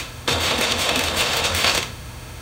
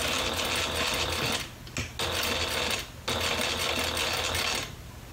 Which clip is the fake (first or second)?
first